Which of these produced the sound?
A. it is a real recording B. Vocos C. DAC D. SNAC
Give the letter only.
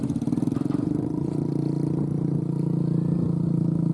A